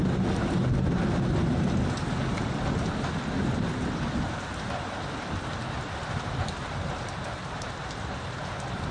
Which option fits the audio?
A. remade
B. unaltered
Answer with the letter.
B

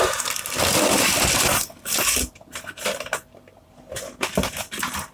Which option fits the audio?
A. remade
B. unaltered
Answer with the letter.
B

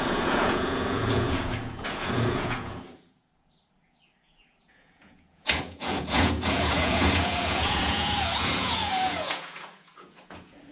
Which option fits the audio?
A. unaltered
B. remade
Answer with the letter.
B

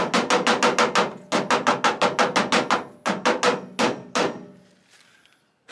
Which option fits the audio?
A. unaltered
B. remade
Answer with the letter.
A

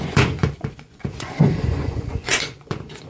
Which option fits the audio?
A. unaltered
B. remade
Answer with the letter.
B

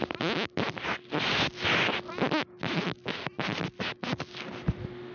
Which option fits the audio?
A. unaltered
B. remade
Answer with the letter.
A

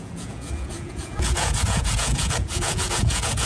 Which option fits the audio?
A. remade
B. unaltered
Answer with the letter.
A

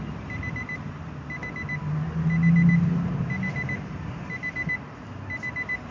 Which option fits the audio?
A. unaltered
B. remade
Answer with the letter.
A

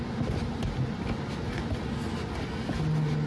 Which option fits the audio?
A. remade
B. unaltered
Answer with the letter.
B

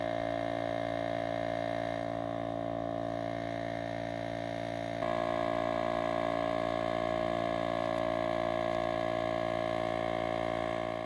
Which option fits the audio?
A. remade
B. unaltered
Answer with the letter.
B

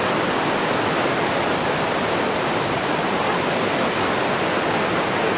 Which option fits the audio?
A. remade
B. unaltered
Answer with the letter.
B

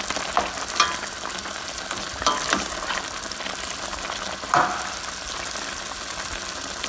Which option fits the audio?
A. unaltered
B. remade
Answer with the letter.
A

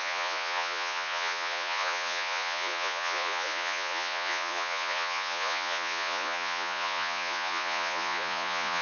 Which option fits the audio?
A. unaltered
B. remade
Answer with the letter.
B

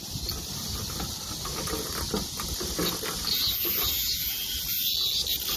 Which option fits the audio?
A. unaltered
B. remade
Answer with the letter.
A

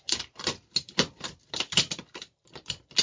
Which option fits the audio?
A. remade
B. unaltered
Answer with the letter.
B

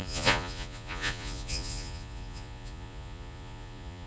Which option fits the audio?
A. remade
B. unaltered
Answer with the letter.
A